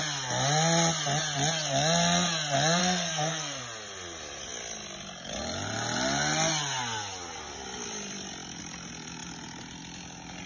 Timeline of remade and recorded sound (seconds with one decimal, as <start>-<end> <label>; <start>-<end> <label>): 0.0-2.8 recorded; 2.8-3.6 remade; 3.6-10.5 recorded